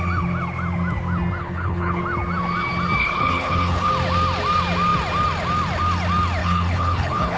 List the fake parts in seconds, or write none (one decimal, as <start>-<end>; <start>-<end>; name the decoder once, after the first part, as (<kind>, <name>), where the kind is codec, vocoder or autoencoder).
1.4-2.0 (codec, HILCodec); 3.0-3.9; 6.4-7.4